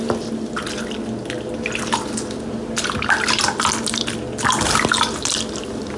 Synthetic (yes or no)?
no